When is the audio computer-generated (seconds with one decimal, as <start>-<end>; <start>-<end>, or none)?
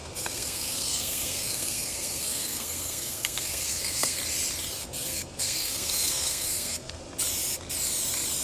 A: 0.0-4.2; 4.8-7.0